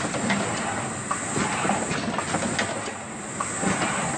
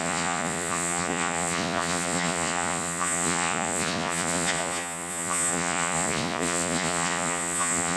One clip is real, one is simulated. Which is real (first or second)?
first